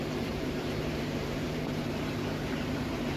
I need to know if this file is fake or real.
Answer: fake